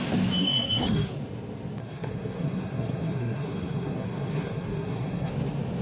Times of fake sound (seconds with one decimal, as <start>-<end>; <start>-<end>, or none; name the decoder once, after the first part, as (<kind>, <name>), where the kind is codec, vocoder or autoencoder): 0.4-1.1 (codec, SNAC); 1.8-5.3

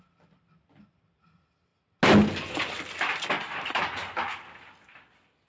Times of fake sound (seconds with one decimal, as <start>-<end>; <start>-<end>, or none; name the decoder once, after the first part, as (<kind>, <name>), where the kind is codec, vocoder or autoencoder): none